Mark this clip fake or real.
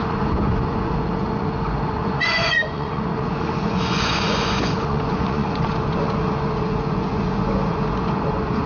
fake